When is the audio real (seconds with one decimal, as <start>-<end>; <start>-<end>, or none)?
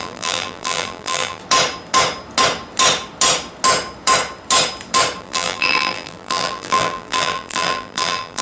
1.4-5.2